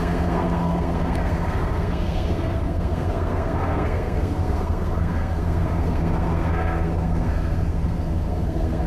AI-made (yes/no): yes